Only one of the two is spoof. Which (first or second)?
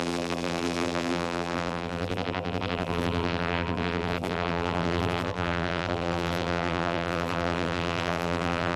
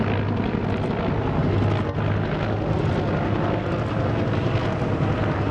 first